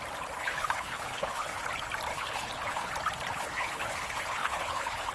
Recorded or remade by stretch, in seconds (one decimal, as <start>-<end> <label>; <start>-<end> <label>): 0.0-0.4 recorded; 0.4-1.6 remade; 1.6-2.1 recorded; 2.1-2.9 remade; 2.9-3.3 recorded; 3.3-5.1 remade